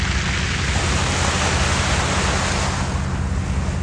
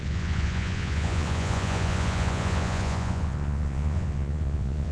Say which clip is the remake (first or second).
second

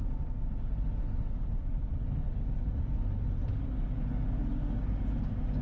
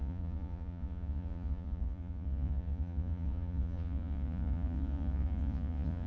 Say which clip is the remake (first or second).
second